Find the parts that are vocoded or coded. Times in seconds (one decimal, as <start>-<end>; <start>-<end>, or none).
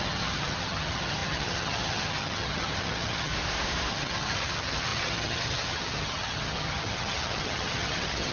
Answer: 0.0-3.3; 3.9-8.3